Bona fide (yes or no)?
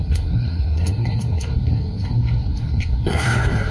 no